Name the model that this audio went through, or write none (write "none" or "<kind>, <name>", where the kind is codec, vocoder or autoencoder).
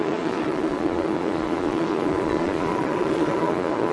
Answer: vocoder, Vocos